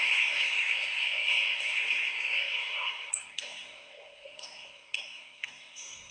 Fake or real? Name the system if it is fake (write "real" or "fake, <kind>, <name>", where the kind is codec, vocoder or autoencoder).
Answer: fake, codec, SNAC